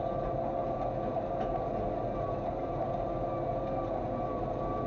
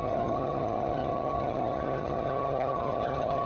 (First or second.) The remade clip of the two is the second